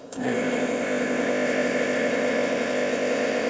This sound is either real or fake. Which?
fake